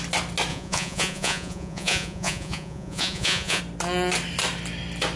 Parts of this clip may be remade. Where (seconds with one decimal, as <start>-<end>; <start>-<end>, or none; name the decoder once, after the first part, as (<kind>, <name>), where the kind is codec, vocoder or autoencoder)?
0.5-3.6 (vocoder, Vocos)